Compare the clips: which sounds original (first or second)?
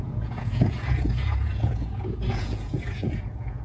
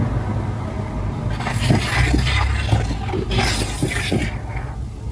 second